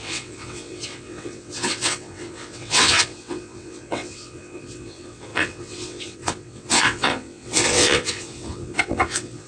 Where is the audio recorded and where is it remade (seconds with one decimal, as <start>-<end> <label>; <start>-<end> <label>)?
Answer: 0.0-9.5 remade

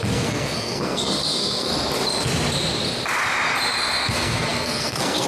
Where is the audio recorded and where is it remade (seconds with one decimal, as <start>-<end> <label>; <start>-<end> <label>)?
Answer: 0.0-1.7 remade; 1.7-4.0 recorded; 4.0-5.3 remade

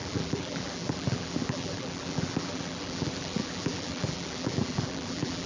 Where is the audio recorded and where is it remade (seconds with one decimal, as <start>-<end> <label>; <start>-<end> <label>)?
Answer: 0.0-5.5 remade

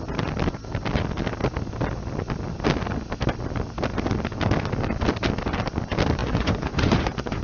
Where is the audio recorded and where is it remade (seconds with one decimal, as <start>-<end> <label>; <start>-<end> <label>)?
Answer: 0.0-6.2 recorded; 6.2-7.4 remade

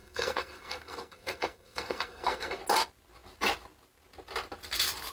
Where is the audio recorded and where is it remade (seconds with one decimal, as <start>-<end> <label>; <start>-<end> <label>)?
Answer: 0.0-2.6 remade; 2.6-5.1 recorded